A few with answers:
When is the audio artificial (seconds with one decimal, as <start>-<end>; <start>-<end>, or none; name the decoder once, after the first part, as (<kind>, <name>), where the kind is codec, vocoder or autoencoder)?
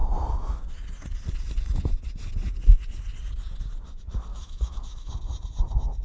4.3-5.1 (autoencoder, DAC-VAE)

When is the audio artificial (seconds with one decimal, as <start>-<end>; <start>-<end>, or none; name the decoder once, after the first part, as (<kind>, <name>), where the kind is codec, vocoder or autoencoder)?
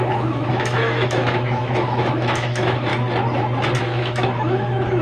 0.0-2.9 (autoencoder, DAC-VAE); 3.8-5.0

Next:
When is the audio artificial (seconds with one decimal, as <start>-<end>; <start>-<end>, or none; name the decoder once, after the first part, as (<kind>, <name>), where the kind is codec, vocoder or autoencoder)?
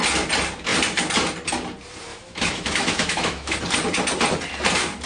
2.1-3.6 (autoencoder, DAC-VAE)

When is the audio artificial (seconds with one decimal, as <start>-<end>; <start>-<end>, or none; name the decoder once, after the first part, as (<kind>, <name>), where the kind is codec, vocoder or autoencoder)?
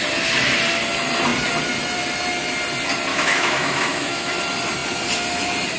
3.1-4.3 (autoencoder, DAC-VAE)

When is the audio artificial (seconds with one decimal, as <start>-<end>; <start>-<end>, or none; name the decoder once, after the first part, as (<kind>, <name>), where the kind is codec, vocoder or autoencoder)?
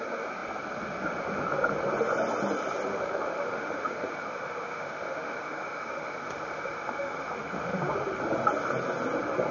2.9-7.9 (autoencoder, DAC-VAE)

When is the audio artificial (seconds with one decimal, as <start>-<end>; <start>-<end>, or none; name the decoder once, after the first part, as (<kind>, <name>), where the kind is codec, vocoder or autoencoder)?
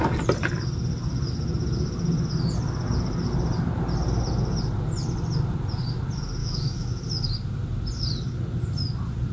6.4-6.9 (autoencoder, DAC-VAE)